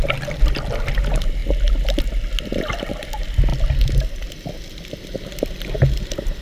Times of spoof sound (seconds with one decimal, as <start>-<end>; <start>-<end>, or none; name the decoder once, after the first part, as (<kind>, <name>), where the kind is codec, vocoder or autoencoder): none